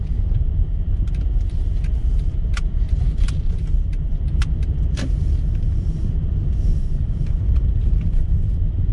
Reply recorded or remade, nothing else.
remade